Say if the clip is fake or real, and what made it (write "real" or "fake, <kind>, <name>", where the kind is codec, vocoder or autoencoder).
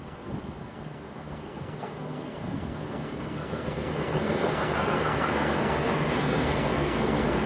fake, codec, SNAC